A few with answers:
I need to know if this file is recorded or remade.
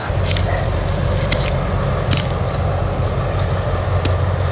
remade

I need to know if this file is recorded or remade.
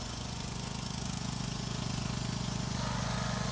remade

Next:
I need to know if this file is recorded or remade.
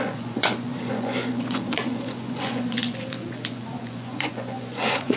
remade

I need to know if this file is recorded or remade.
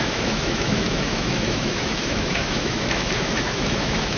remade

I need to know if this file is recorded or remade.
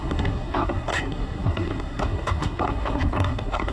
remade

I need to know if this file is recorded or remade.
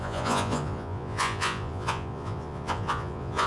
remade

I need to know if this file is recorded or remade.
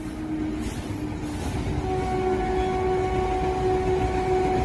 recorded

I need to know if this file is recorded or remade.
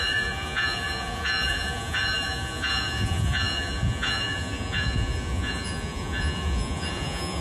remade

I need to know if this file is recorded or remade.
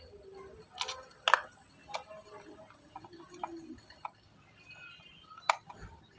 recorded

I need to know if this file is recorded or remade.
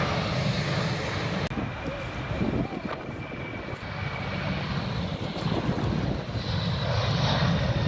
recorded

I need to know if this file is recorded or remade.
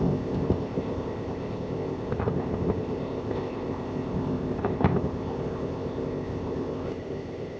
remade